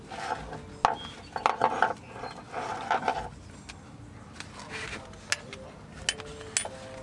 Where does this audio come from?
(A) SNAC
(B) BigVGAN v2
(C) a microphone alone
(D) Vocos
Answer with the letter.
C